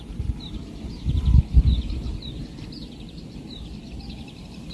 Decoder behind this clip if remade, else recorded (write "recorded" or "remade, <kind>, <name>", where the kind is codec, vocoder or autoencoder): recorded